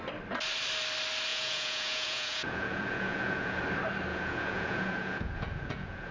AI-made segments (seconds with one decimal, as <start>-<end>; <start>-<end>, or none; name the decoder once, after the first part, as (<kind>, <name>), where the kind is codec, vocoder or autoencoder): 1.3-3.6 (vocoder, Vocos); 4.1-6.1